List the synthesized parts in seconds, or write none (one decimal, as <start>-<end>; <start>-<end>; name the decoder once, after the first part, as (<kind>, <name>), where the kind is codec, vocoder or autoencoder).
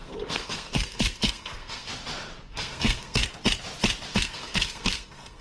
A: 0.0-1.9 (codec, SNAC); 2.5-3.2; 4.1-5.4